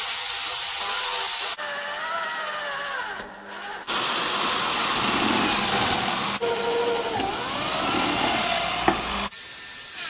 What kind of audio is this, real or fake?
real